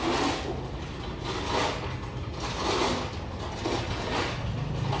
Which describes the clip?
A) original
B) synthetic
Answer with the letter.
A